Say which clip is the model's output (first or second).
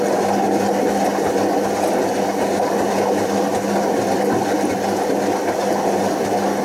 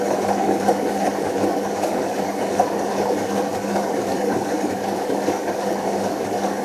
second